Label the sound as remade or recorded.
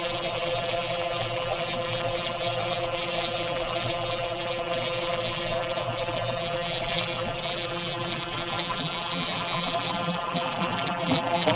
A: remade